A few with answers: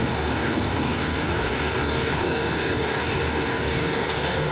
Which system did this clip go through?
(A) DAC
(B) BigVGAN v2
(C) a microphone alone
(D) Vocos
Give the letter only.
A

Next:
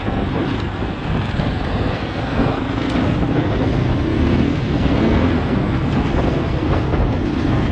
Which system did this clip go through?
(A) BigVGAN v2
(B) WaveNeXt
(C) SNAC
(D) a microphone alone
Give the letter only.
C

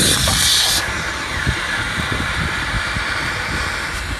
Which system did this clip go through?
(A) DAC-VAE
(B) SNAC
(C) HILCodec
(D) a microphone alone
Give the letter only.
D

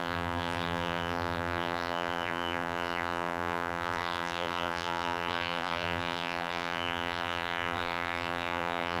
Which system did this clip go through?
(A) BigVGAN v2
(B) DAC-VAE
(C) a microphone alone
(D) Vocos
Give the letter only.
A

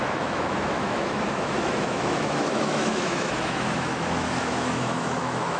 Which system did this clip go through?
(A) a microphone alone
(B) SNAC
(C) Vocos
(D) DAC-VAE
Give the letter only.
D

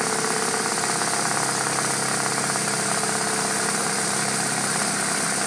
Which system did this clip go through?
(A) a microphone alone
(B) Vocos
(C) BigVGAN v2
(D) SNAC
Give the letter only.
A